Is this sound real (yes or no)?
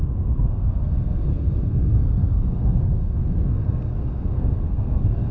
no